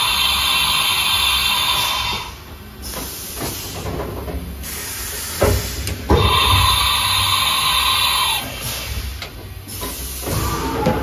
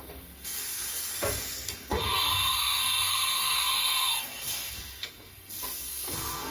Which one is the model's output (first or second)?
second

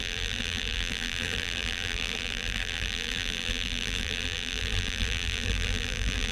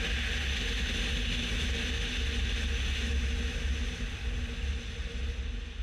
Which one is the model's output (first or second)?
first